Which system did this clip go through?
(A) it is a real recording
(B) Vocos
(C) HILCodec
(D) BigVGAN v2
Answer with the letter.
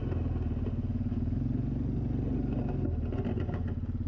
A